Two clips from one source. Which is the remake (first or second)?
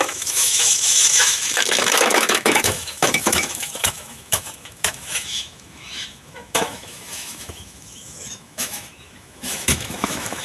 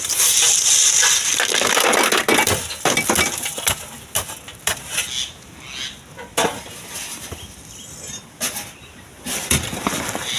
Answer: first